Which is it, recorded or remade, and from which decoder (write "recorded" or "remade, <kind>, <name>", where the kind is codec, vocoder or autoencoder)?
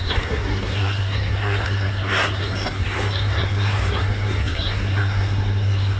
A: remade, codec, SNAC